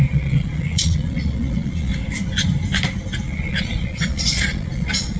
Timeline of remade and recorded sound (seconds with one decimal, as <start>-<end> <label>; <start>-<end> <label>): 0.0-1.9 remade; 1.9-3.2 recorded; 3.2-5.2 remade